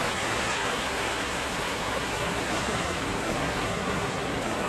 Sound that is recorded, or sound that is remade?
remade